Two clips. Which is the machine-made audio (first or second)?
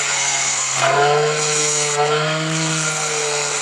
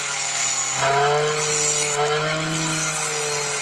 first